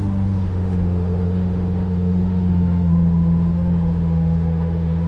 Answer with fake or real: fake